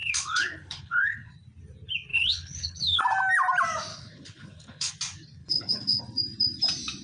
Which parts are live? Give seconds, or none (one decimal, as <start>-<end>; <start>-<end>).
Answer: 1.3-2.1; 3.0-3.9; 4.9-5.4; 6.0-7.0